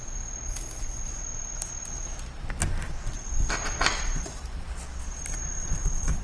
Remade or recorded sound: recorded